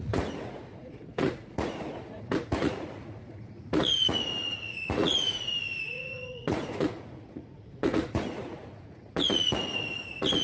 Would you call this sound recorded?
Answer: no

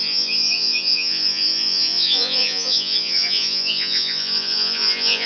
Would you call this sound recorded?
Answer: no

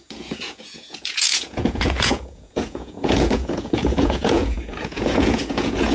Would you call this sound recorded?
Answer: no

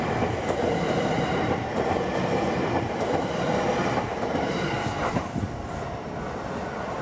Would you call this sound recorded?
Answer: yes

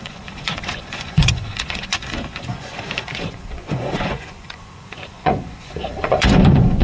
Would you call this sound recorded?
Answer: no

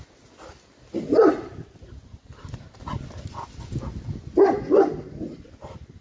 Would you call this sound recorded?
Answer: yes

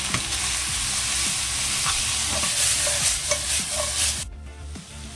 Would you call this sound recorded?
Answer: yes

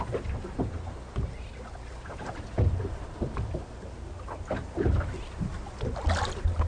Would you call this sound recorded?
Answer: yes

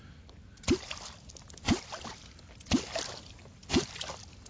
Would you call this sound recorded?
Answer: yes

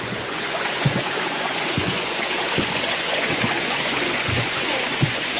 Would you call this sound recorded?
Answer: no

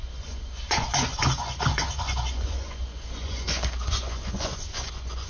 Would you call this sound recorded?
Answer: no